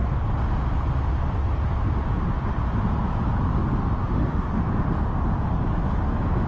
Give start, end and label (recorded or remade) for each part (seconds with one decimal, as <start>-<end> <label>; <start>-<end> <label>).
0.0-4.0 recorded; 4.0-4.7 remade; 4.7-6.5 recorded